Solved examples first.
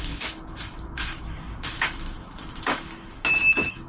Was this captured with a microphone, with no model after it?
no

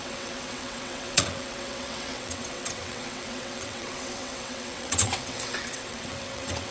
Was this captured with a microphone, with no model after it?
no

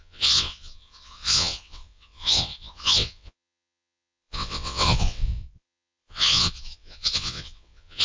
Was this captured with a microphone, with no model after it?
no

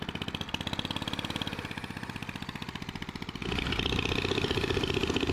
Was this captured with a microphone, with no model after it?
yes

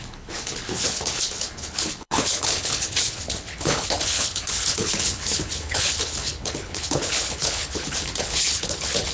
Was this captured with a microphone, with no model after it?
no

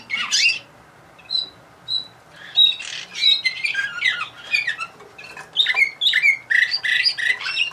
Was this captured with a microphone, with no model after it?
yes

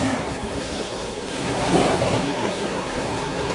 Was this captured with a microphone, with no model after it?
no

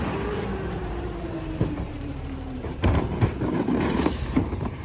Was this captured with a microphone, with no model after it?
no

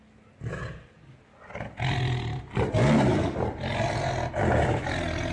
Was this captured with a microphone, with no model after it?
yes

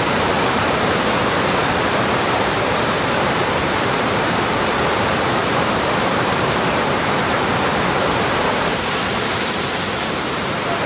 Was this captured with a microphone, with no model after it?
no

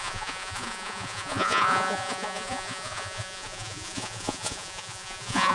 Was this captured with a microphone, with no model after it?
no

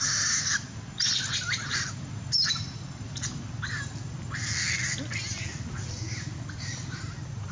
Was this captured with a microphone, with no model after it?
yes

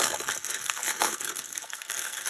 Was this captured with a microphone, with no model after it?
no